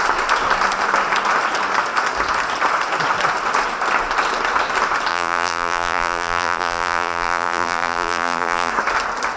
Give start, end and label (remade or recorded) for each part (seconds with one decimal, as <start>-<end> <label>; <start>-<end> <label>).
0.0-5.1 recorded; 5.1-8.7 remade; 8.7-9.4 recorded